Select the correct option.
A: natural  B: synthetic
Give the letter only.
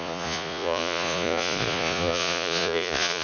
B